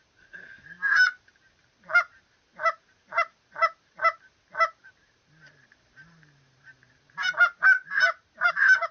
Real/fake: fake